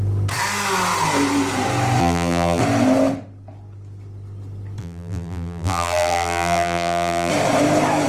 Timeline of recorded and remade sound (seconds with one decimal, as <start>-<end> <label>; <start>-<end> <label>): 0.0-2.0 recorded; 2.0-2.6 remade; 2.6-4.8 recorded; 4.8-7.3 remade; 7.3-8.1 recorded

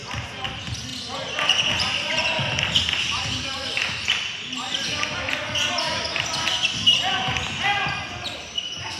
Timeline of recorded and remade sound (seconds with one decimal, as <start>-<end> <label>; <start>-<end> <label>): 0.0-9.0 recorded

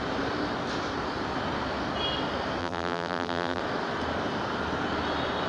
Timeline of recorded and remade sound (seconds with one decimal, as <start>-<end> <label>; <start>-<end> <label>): 0.0-2.6 recorded; 2.6-3.6 remade; 3.6-5.5 recorded

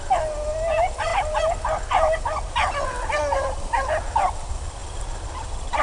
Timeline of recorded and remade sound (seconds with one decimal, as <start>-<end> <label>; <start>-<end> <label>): 0.0-5.8 recorded

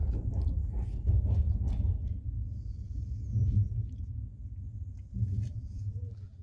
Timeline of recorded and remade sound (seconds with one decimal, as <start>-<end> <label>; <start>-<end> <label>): 0.0-5.5 recorded; 5.5-6.4 remade

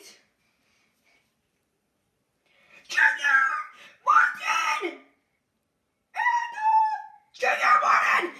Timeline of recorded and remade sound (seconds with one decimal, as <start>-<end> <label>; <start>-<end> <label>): 0.0-0.6 recorded; 0.6-3.0 remade; 3.0-3.6 recorded; 3.6-6.8 remade; 6.8-8.4 recorded